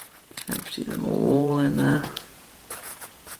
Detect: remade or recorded remade